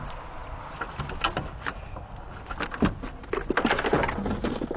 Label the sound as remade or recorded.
recorded